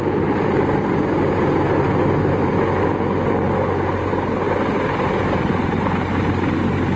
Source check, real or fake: real